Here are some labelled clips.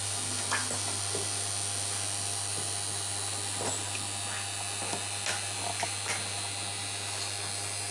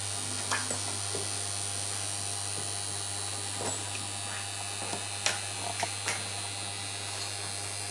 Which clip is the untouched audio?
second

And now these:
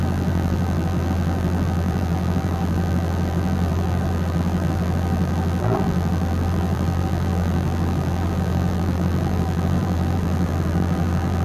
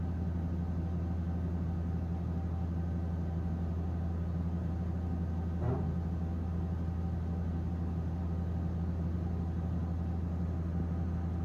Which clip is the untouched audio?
second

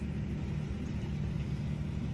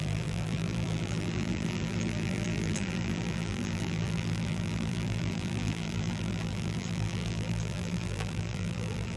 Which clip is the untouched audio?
first